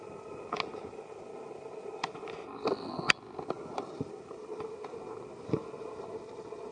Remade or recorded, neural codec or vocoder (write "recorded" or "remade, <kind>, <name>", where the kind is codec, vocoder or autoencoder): recorded